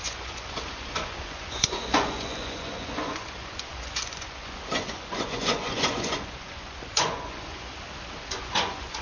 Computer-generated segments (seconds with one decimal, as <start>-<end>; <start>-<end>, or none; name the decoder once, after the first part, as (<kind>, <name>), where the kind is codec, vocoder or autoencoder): 0.0-7.7 (vocoder, Vocos); 8.2-9.0